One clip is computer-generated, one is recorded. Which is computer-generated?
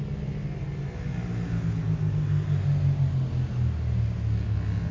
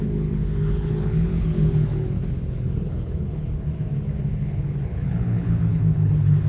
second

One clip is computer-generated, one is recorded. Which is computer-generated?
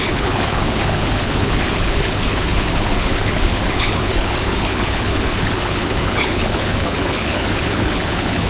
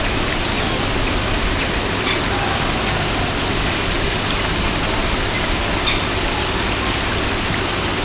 first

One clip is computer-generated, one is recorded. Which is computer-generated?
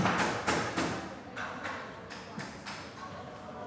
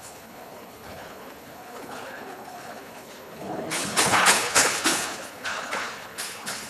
second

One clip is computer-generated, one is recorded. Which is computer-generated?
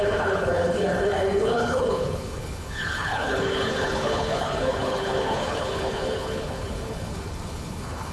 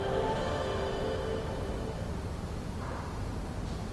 first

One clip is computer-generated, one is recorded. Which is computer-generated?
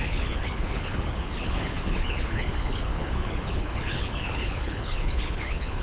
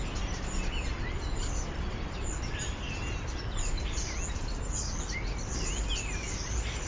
first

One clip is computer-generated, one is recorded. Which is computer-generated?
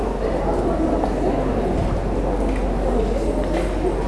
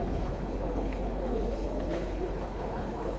second